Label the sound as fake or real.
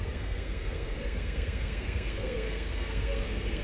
fake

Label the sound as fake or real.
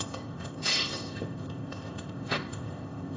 fake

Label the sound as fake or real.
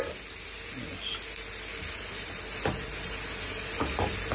real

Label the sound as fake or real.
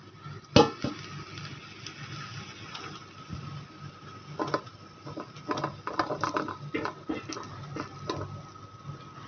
real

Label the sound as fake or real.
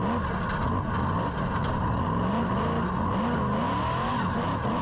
real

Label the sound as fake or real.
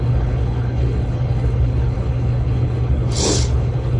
fake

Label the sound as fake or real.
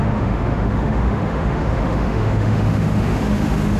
fake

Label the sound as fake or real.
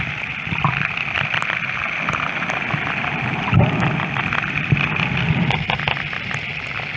fake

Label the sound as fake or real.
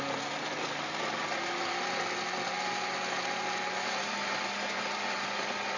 real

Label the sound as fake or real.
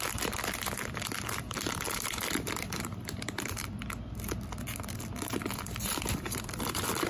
fake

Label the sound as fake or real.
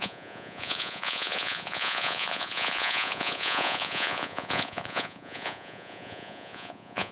fake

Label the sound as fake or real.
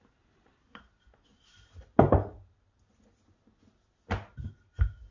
real